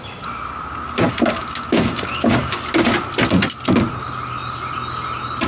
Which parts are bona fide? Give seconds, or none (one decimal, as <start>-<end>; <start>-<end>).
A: 0.0-1.3; 2.5-5.5